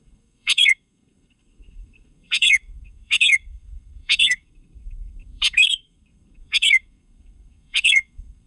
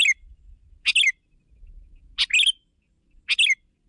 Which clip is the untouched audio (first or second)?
second